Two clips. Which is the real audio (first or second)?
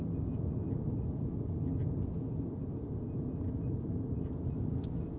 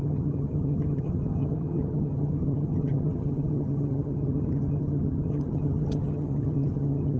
first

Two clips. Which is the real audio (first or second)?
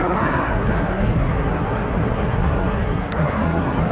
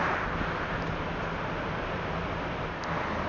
second